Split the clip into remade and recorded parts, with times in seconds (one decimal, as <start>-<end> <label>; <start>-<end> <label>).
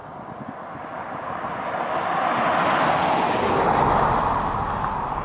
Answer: 0.0-5.2 recorded